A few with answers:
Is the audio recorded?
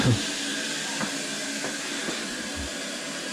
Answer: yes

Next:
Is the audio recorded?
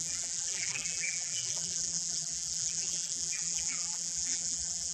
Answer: no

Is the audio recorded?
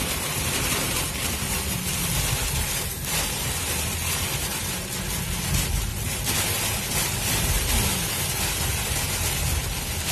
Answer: yes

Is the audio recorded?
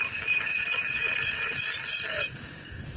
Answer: yes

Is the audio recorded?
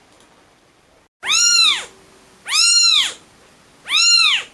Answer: yes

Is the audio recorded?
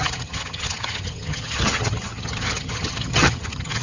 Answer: no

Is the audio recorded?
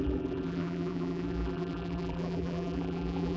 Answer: no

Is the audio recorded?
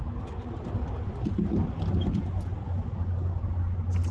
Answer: yes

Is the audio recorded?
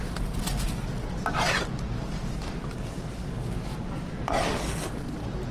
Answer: yes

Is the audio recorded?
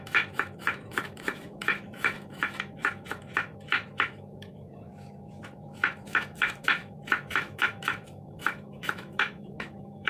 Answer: no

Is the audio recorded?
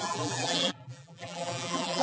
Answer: no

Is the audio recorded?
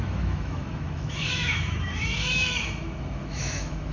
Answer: no